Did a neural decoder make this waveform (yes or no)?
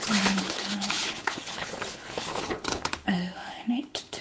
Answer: yes